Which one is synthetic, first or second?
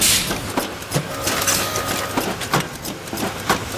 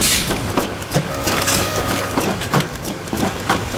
second